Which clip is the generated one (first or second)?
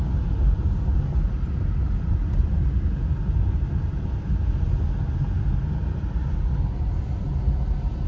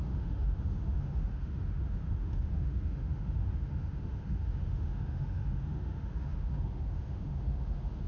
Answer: second